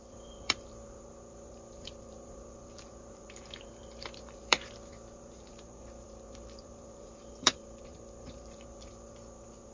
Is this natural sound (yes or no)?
no